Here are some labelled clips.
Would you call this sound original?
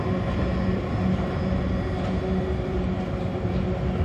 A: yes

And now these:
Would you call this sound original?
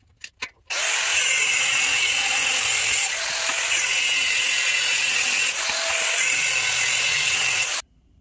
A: yes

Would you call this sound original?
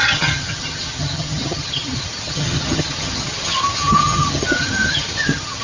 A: no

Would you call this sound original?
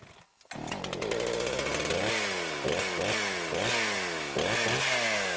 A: yes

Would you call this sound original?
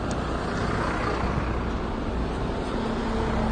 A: yes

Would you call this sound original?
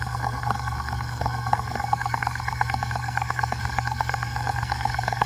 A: no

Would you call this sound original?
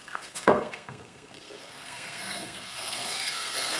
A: no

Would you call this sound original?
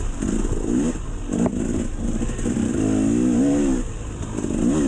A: yes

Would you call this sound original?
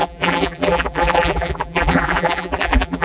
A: no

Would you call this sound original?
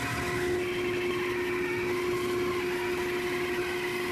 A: yes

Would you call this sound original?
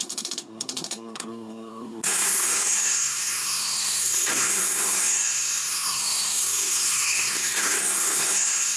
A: no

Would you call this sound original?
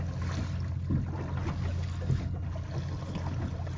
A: yes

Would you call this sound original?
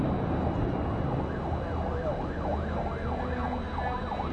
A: yes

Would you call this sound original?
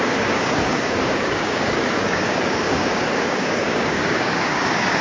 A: no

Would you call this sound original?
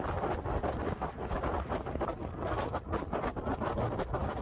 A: yes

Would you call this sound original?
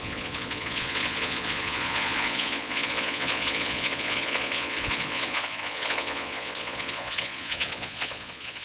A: no